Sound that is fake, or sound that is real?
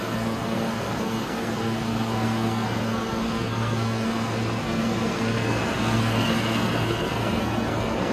fake